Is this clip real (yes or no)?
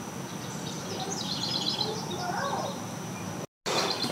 yes